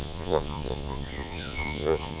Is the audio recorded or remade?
remade